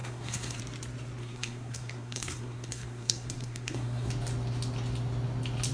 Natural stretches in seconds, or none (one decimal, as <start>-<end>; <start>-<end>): 0.6-1.2; 4.1-5.7